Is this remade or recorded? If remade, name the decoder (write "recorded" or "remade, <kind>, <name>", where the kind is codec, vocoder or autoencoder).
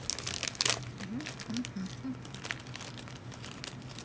recorded